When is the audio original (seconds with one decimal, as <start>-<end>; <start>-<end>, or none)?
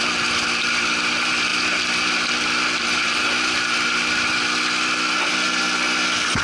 0.0-6.4